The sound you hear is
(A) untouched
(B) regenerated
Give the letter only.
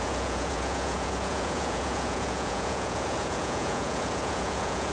B